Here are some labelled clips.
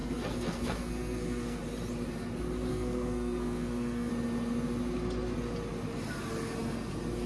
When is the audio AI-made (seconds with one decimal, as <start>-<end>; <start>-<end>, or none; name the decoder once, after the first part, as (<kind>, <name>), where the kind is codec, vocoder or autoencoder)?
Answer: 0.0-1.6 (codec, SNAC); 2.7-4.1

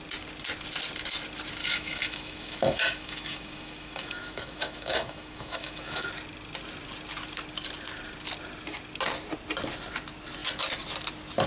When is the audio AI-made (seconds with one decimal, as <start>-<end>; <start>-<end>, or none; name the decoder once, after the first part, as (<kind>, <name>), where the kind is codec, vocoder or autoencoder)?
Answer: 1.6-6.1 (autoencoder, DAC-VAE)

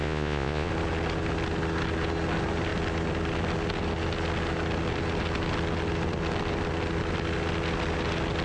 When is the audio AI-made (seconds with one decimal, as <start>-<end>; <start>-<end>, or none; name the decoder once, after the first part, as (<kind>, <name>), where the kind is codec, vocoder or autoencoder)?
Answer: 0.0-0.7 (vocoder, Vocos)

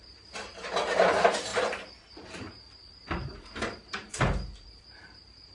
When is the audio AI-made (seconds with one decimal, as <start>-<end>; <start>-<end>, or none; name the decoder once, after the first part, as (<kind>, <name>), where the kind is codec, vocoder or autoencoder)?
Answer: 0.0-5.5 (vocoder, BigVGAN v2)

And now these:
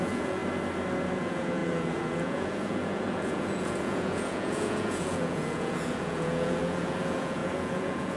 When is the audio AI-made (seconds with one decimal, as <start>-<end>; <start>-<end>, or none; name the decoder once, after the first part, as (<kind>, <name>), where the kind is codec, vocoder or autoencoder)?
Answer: 0.0-0.4 (vocoder, Vocos); 1.1-8.2

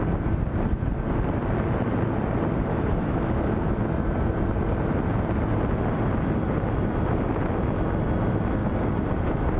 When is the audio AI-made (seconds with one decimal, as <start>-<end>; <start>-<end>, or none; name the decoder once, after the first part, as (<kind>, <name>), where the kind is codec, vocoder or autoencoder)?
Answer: 2.7-3.3 (autoencoder, DAC-VAE)

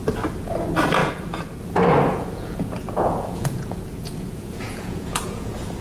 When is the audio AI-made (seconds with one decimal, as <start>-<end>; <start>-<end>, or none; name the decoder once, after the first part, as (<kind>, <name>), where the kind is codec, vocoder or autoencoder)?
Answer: 1.0-1.6 (vocoder, Vocos); 2.1-5.8